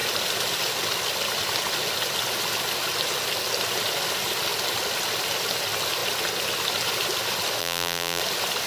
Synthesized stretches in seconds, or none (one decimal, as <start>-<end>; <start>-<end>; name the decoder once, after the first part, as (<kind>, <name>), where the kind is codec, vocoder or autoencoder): 7.6-8.2 (vocoder, BigVGAN v2)